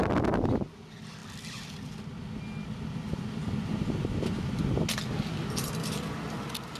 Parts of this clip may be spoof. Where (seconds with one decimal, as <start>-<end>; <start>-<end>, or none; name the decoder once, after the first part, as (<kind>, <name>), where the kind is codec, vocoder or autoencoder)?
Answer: none